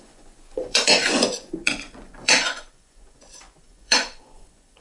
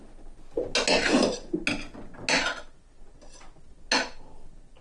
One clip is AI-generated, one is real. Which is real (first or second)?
second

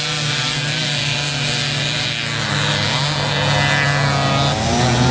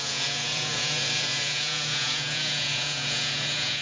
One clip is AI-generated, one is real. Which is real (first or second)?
first